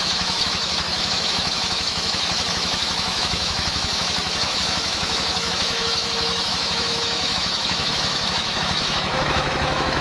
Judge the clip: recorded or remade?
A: remade